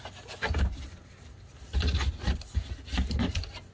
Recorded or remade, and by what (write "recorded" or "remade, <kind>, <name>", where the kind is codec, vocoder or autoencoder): recorded